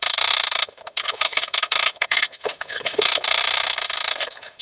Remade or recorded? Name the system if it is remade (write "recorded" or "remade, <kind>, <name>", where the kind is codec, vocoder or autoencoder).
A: remade, autoencoder, DAC-VAE